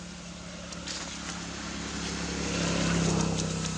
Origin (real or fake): real